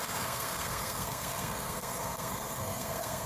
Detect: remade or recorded remade